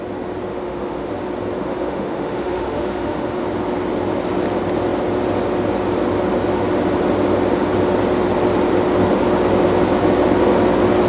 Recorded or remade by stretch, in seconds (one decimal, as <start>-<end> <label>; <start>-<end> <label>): 0.0-0.5 recorded; 0.5-1.1 remade; 1.1-1.6 recorded; 1.6-3.4 remade; 3.4-11.1 recorded